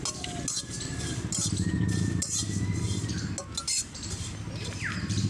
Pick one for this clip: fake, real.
real